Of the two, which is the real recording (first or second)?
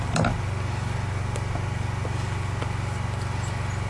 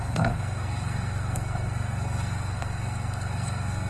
first